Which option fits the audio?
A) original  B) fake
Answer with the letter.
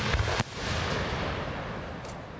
A